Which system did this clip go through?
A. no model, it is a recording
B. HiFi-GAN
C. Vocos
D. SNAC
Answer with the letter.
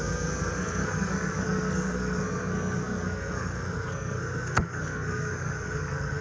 D